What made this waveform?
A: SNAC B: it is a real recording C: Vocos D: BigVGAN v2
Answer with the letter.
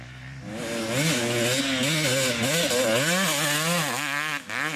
B